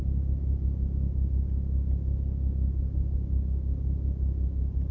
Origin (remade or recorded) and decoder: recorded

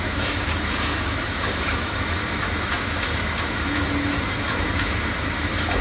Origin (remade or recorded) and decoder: remade, autoencoder, DAC-VAE